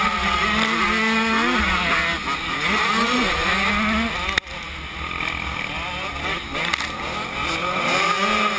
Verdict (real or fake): real